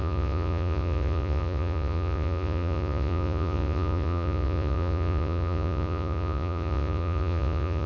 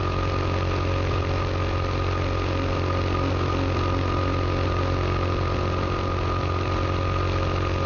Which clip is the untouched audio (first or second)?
second